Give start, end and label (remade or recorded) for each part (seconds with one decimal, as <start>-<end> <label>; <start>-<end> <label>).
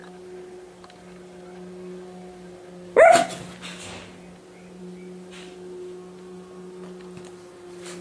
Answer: 0.0-8.0 recorded